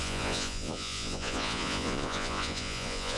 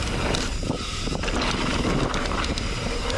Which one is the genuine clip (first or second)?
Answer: second